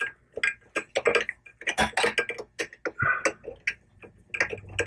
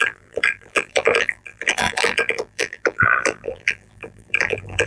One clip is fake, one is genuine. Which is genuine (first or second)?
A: first